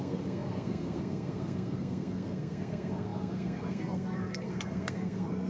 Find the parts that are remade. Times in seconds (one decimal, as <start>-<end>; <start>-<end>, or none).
0.0-5.5